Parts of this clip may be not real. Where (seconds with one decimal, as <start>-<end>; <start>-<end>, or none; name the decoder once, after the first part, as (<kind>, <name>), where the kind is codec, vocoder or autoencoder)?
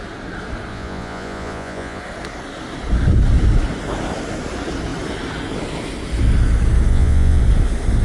0.7-2.0 (vocoder, Vocos); 6.9-7.4